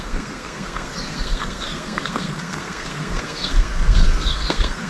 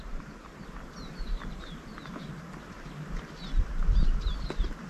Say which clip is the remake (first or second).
first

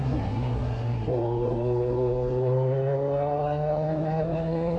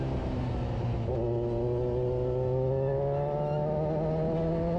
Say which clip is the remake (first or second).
first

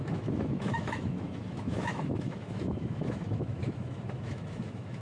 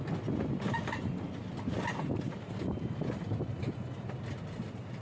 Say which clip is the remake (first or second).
first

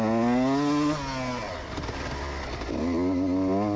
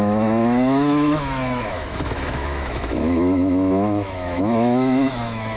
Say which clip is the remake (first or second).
second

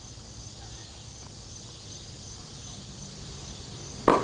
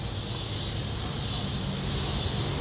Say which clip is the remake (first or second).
first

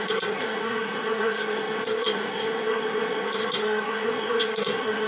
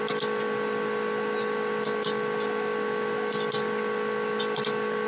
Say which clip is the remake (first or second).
first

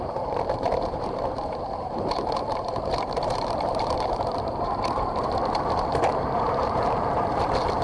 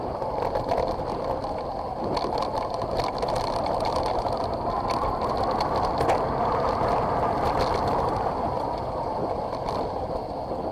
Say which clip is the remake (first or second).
first